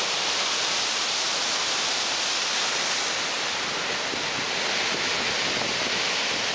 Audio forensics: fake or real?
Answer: real